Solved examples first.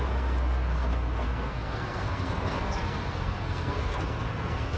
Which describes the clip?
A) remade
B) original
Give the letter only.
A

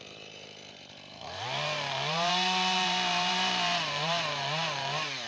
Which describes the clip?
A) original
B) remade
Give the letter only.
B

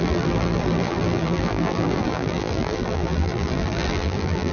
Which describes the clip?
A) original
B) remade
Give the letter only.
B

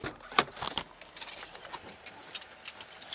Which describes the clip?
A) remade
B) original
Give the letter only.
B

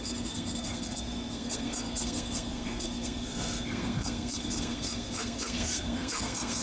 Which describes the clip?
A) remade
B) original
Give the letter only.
A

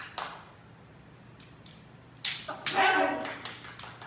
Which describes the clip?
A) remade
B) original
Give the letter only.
B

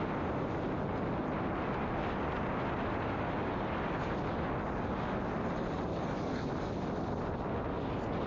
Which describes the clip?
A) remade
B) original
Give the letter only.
B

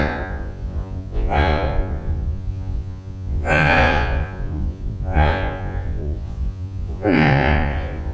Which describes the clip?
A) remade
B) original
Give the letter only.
A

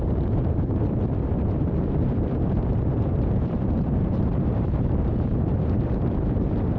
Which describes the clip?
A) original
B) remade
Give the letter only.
B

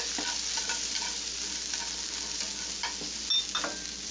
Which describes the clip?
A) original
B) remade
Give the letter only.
A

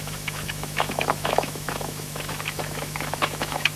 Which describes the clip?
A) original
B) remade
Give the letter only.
B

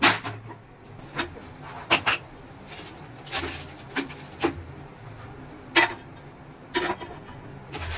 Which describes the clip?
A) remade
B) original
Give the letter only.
B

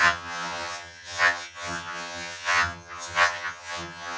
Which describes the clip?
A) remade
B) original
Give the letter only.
A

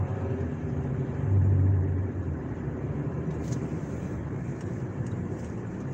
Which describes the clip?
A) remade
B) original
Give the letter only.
A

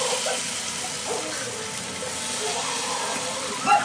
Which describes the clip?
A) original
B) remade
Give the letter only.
A